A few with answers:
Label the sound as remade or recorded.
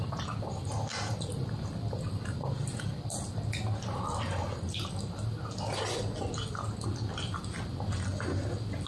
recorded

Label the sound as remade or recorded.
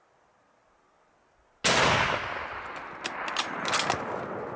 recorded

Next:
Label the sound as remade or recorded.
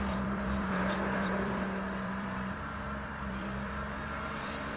remade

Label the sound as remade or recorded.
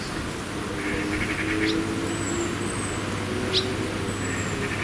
recorded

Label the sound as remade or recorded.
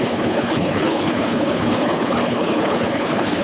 remade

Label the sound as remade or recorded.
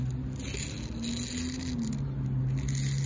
recorded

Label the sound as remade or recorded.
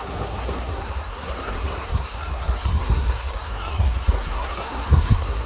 remade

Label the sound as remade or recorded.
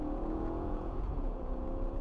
remade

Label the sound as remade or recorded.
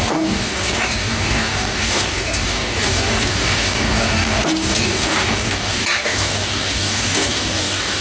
remade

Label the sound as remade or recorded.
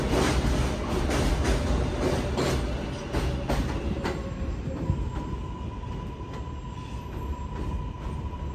recorded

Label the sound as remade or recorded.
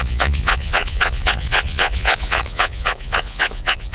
remade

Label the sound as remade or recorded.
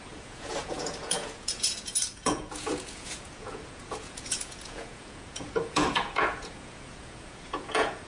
remade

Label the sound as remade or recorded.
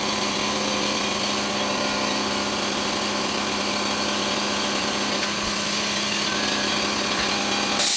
recorded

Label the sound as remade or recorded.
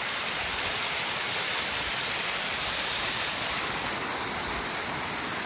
recorded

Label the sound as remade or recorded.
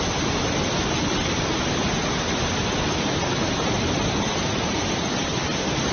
recorded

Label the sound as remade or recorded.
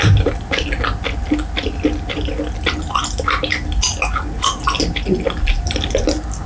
recorded